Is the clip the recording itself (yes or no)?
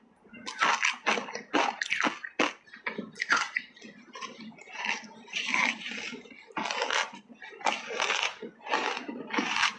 yes